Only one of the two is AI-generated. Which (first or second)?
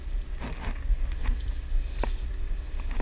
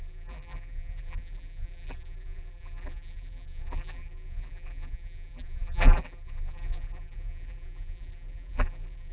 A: second